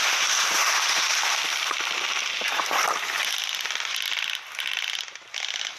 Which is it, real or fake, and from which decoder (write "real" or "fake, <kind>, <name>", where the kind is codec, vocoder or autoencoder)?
real